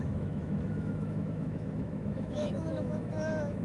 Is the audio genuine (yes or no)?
no